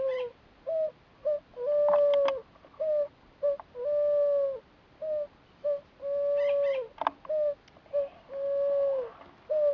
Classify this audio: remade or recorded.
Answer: recorded